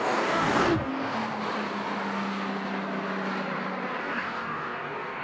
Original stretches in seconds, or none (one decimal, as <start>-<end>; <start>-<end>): 0.9-4.0